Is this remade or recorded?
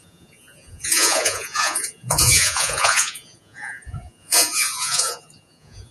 remade